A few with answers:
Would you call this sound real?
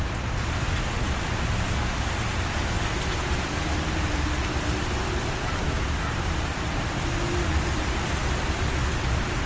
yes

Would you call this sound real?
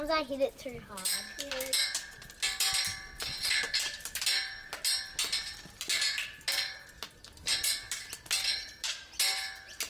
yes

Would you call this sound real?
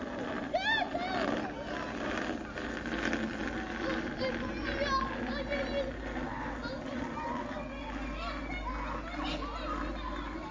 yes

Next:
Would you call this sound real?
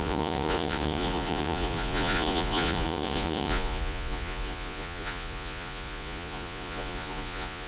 no